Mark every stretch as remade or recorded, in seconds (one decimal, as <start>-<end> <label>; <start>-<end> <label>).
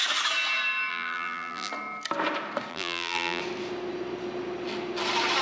0.0-0.9 recorded; 0.9-1.7 remade; 1.7-2.7 recorded; 2.7-3.4 remade; 3.4-5.4 recorded